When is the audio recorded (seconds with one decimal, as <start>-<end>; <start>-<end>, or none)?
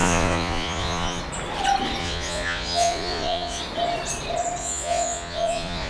1.2-2.0; 3.6-4.6